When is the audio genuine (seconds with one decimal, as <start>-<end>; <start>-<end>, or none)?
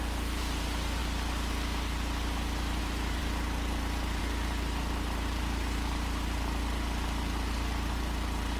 1.0-2.8; 3.2-4.2